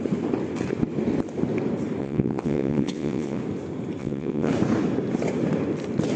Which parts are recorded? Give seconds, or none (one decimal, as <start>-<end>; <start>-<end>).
0.0-2.0; 3.4-4.0; 4.5-6.2

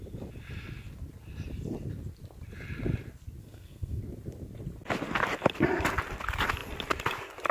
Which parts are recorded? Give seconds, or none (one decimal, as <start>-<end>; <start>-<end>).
0.0-3.4; 4.0-7.5

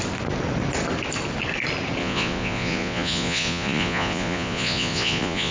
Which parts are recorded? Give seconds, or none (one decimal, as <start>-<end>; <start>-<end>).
0.0-2.0